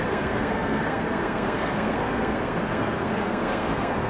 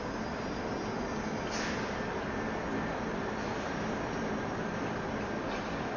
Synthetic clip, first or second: first